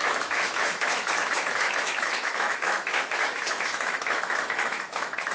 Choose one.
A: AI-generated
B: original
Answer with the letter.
A